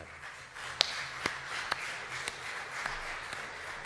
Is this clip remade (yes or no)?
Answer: no